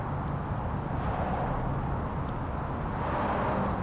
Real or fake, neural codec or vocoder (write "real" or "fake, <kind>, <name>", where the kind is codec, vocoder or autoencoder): real